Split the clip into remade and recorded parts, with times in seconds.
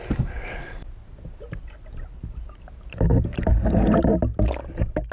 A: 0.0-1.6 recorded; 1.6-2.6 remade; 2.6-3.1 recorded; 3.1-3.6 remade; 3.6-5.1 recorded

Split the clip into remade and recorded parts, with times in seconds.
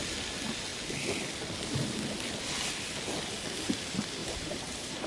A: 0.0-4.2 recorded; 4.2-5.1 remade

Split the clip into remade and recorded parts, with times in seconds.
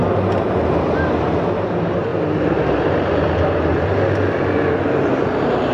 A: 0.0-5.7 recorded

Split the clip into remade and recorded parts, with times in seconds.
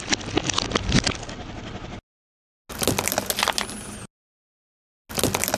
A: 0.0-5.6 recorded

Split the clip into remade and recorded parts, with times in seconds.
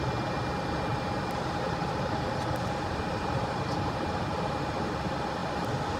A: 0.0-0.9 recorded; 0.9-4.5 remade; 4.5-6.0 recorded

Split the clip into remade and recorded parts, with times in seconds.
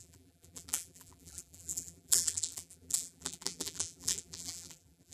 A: 0.0-5.1 remade